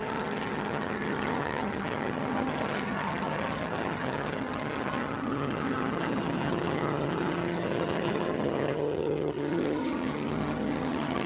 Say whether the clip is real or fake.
fake